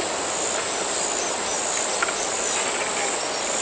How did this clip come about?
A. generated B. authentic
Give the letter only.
B